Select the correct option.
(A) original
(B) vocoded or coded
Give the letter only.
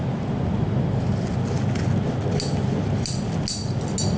A